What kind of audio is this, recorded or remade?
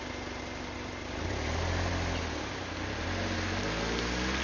recorded